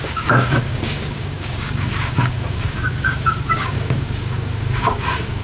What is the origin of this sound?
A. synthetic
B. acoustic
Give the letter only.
A